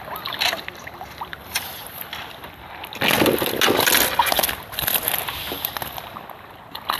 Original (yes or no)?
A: yes